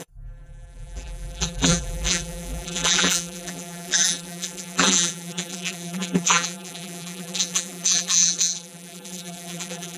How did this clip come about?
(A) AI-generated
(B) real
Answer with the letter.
A